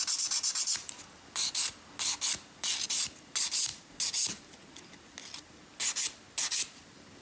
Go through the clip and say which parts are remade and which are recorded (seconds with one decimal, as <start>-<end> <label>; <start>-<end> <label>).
0.0-7.2 recorded